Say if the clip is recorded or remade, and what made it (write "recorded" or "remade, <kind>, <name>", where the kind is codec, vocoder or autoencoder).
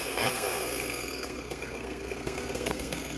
remade, codec, SNAC